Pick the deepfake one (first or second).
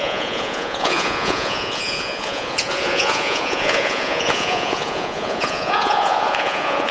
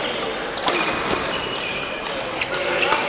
first